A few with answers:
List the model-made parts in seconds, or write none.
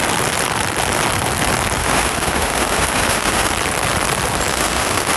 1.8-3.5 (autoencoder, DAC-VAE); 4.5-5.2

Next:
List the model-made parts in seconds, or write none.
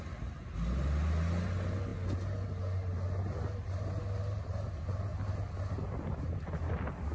none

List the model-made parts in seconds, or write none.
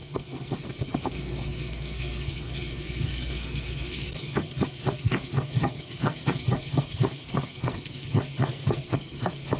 0.0-9.6 (codec, SNAC)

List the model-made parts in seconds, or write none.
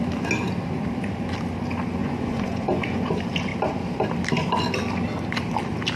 2.0-3.1 (vocoder, Vocos)